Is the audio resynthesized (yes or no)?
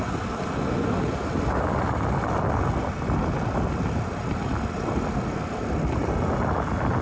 no